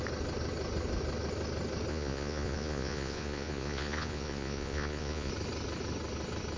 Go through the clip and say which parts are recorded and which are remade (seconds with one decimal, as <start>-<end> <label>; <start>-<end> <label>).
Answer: 0.0-1.9 recorded; 1.9-5.3 remade; 5.3-6.6 recorded